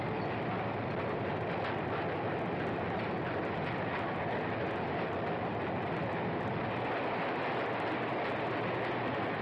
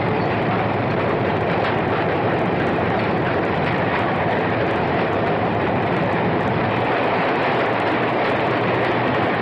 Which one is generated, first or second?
second